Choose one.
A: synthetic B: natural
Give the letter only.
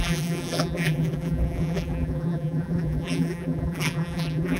A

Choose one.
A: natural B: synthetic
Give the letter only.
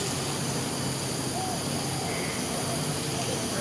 A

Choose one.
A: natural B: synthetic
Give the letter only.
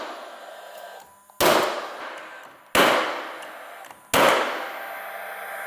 A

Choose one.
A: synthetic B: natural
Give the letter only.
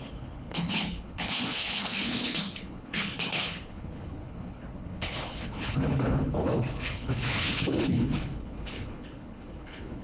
A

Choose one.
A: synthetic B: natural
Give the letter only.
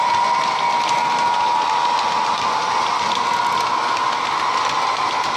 B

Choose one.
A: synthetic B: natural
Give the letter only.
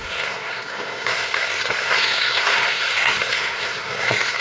A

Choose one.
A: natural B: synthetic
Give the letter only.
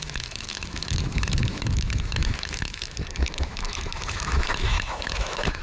B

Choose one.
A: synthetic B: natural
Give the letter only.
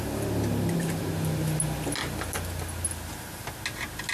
B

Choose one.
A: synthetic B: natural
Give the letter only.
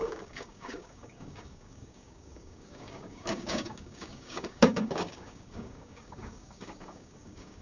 A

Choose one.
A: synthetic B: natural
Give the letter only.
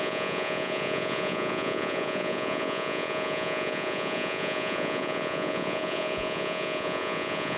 A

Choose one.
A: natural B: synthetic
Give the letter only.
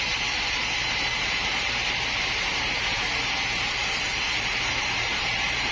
B